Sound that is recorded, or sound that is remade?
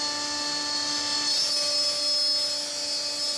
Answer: recorded